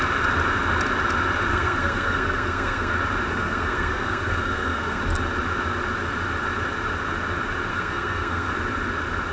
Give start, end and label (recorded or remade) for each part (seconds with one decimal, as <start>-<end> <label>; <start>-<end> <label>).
0.0-1.5 recorded; 1.5-2.9 remade; 2.9-3.3 recorded; 3.3-5.0 remade; 5.0-7.7 recorded; 7.7-8.5 remade; 8.5-9.3 recorded